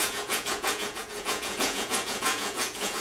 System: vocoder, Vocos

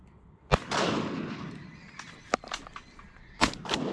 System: none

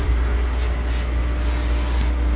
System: none